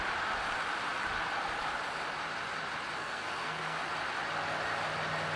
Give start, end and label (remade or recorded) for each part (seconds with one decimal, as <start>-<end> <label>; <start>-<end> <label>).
0.0-3.0 recorded; 3.0-3.8 remade; 3.8-5.4 recorded

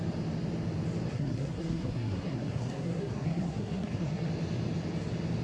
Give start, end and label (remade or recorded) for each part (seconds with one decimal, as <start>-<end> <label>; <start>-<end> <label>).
0.0-1.1 recorded; 1.1-4.3 remade; 4.3-5.4 recorded

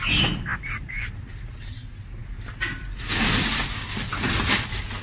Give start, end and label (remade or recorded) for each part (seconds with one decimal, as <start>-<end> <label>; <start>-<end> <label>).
0.0-5.0 recorded

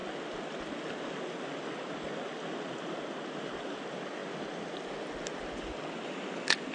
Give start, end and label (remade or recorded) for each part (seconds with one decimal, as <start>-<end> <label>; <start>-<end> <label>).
0.0-6.7 recorded

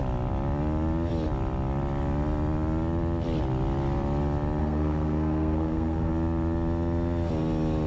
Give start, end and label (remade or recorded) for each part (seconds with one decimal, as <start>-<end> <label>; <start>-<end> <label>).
0.0-4.6 recorded; 4.6-6.1 remade; 6.1-7.9 recorded

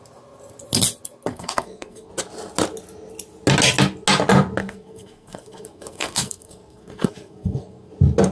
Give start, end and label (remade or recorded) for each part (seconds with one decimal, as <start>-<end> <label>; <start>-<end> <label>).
0.0-1.3 recorded; 1.3-2.1 remade; 2.1-4.6 recorded; 4.6-7.9 remade; 7.9-8.3 recorded

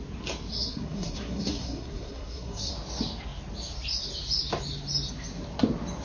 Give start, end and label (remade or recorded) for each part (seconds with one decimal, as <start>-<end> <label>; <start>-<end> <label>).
0.0-0.5 recorded; 0.5-2.7 remade; 2.7-6.0 recorded